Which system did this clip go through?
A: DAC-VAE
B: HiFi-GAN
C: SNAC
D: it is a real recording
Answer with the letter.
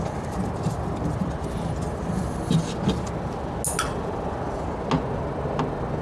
D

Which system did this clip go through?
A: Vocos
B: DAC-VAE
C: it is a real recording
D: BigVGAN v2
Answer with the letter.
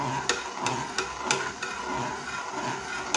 C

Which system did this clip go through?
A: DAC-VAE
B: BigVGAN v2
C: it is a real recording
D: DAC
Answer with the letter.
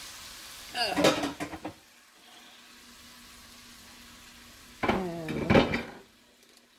C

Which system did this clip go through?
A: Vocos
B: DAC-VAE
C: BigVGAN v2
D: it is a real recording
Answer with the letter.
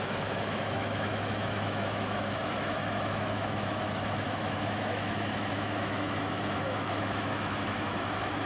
B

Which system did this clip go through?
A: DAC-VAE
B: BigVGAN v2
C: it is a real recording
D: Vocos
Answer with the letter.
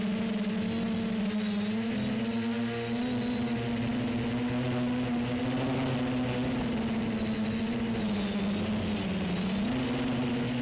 C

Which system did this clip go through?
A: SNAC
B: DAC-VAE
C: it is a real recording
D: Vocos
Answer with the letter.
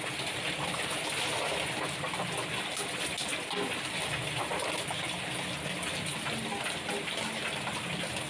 C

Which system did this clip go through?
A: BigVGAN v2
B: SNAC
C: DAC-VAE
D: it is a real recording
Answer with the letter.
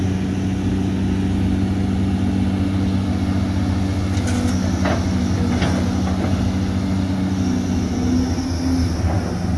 D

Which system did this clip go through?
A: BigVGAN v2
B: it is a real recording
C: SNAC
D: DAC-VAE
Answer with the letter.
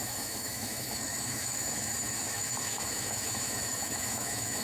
D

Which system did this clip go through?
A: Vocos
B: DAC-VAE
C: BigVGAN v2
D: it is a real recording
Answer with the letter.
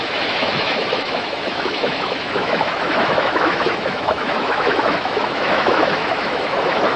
B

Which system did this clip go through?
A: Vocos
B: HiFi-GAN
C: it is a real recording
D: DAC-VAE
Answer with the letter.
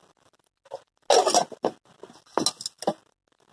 C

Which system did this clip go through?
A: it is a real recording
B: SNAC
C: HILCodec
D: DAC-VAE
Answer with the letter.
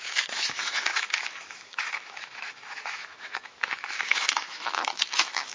D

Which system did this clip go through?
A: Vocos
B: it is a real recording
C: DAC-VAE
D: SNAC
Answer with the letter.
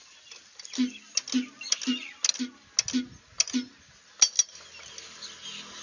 B